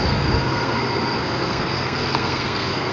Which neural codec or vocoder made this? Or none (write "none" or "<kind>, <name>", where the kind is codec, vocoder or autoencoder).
codec, SNAC